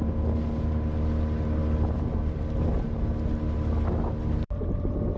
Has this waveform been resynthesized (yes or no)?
no